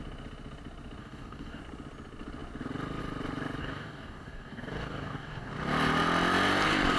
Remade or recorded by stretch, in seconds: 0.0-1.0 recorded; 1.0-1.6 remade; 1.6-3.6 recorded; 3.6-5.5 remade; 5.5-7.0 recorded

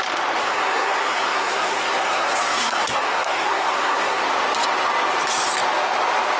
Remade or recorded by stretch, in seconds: 0.0-0.4 recorded; 0.4-4.2 remade; 4.2-6.4 recorded

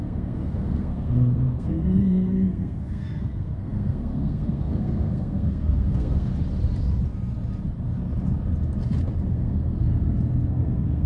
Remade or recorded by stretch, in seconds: 0.0-6.3 remade; 6.3-9.3 recorded; 9.3-9.9 remade; 9.9-10.5 recorded; 10.5-11.1 remade